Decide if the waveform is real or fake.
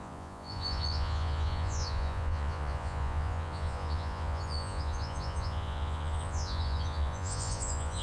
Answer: fake